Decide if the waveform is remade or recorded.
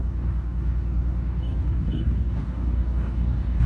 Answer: remade